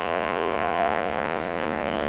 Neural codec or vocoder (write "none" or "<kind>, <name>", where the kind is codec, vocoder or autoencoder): vocoder, Vocos